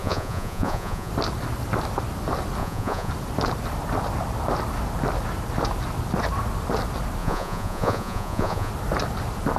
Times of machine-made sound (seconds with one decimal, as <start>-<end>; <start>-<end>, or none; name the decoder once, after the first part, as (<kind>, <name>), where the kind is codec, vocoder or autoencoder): 0.0-1.1 (vocoder, Vocos); 2.6-3.1; 7.2-8.7